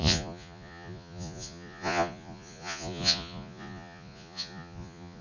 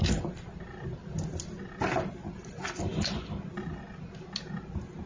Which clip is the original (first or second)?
second